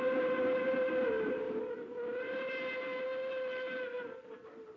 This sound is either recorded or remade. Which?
recorded